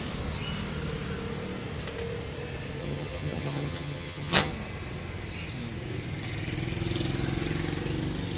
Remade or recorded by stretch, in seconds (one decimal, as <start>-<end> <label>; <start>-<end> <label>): 0.0-2.8 recorded; 2.8-4.5 remade; 4.5-8.4 recorded